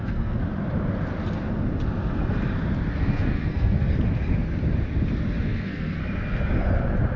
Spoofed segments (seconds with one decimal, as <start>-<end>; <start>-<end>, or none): 0.0-0.4; 2.9-3.9; 5.4-6.0